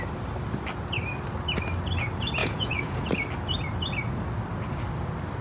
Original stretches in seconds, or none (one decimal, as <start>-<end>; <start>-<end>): 0.0-2.4; 3.1-5.4